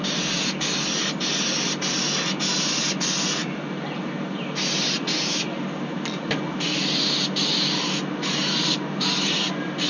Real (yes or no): yes